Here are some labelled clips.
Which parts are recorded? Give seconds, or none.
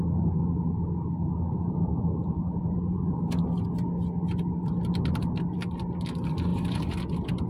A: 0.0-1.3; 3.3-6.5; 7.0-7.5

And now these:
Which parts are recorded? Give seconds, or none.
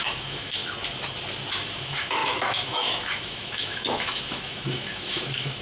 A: 0.6-1.5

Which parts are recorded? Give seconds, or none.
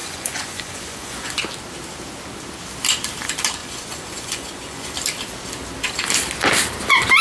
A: 1.4-3.6; 4.9-7.2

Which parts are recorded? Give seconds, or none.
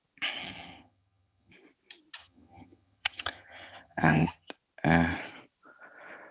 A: 0.0-0.4; 1.5-2.2; 4.5-6.3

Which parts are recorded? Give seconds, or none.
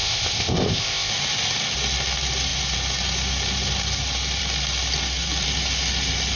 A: 1.1-6.4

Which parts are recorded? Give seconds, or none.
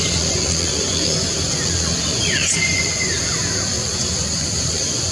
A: none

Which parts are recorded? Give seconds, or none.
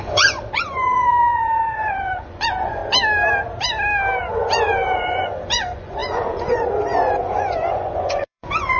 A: 2.8-4.2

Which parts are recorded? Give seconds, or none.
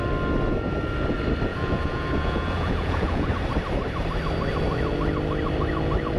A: 0.0-1.5; 3.3-6.2